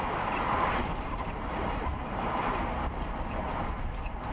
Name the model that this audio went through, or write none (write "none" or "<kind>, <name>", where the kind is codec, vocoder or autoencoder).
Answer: none